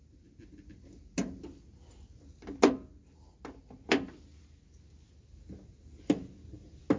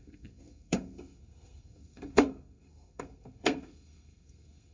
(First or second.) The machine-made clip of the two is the second